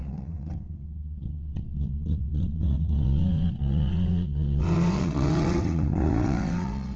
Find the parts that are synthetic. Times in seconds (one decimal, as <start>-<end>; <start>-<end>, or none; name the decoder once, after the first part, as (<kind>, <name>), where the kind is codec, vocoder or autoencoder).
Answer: 0.0-7.0 (vocoder, WaveNeXt)